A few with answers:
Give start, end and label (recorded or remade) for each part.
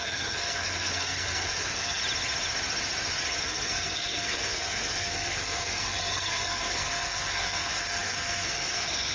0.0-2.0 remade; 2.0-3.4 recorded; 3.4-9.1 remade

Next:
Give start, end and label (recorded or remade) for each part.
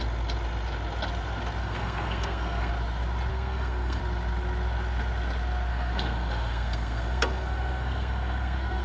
0.0-1.6 recorded; 1.6-2.7 remade; 2.7-3.3 recorded; 3.3-4.0 remade; 4.0-5.7 recorded; 5.7-8.8 remade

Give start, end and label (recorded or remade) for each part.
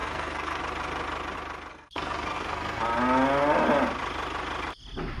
0.0-0.6 remade; 0.6-1.7 recorded; 1.7-2.8 remade; 2.8-5.2 recorded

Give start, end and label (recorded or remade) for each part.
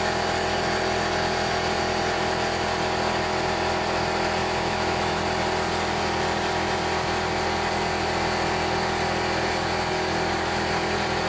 0.0-4.4 recorded; 4.4-5.2 remade; 5.2-11.3 recorded